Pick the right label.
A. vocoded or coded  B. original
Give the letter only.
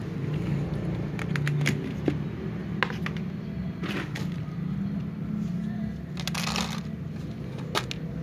B